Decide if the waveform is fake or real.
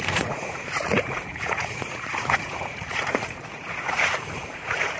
fake